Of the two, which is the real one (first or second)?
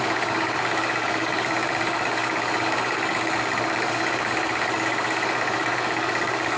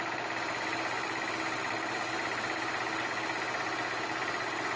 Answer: second